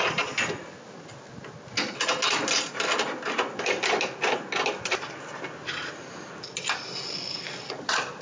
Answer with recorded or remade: recorded